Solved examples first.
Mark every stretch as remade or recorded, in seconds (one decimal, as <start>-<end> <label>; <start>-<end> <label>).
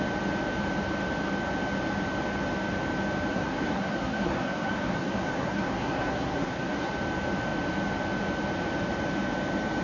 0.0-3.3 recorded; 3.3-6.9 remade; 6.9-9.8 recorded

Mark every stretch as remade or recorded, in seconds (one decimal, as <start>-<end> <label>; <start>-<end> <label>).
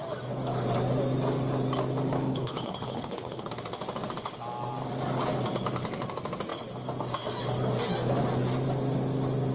0.0-2.3 recorded; 2.3-3.5 remade; 3.5-9.5 recorded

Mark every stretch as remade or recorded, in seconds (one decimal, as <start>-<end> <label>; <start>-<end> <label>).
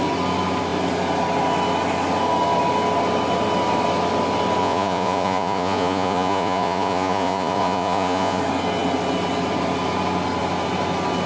0.0-4.6 recorded; 4.6-8.4 remade; 8.4-11.3 recorded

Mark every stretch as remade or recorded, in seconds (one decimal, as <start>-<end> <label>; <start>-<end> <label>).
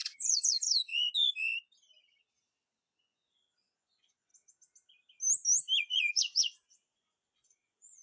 0.0-0.9 remade; 0.9-3.0 recorded; 3.0-4.3 remade; 4.3-5.8 recorded; 5.8-8.0 remade